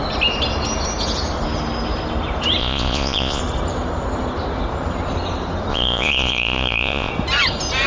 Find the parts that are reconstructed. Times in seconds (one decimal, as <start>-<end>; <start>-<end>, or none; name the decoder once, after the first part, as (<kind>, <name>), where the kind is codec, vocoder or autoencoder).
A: 2.6-3.4 (vocoder, Vocos); 5.7-7.1